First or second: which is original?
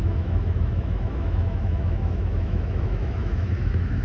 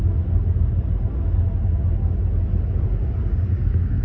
second